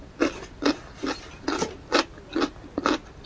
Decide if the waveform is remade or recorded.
recorded